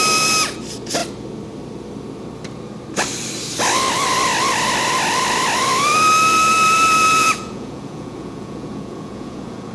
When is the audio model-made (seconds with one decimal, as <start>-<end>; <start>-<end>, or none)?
7.2-9.7